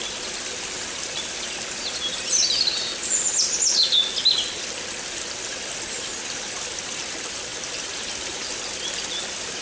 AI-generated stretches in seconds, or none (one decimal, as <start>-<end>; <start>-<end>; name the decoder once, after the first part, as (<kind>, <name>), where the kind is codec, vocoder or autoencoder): none